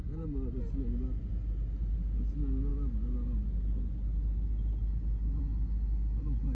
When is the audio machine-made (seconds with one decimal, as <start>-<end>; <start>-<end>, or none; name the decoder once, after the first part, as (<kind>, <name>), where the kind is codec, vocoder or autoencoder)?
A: none